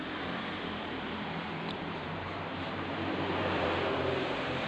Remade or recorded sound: remade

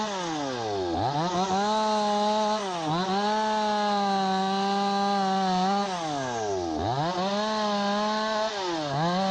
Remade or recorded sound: recorded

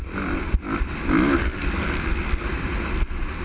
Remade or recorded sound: recorded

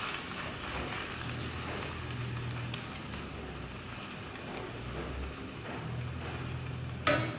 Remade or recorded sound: recorded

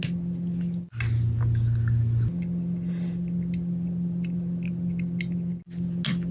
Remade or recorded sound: recorded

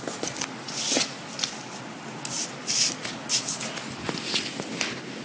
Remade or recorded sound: recorded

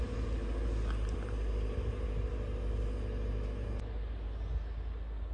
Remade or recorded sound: recorded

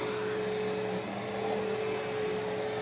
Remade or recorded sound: recorded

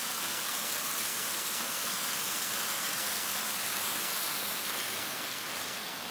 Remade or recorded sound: remade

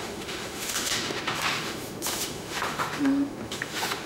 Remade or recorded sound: remade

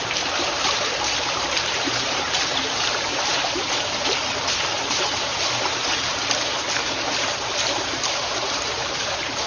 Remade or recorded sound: remade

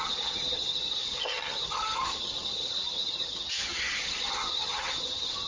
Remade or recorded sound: remade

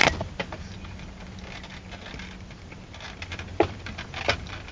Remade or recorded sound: recorded